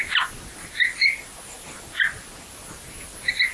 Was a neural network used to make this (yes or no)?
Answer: no